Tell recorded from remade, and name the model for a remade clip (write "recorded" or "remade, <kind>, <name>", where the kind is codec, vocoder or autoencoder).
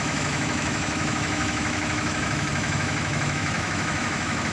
remade, autoencoder, DAC-VAE